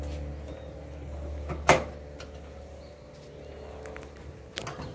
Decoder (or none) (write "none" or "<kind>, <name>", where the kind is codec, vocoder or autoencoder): none